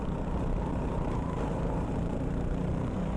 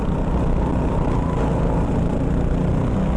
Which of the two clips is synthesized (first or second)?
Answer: first